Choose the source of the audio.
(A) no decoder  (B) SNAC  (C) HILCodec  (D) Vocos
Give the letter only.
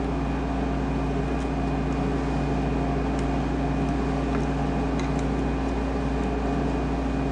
A